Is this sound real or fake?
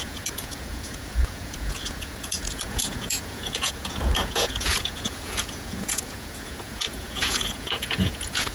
fake